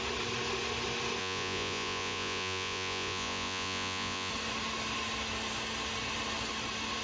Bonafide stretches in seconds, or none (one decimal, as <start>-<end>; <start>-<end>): 0.0-1.2; 4.3-7.0